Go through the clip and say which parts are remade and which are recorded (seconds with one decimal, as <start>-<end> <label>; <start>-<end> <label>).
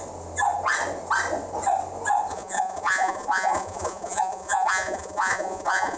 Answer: 0.0-2.3 recorded; 2.3-6.0 remade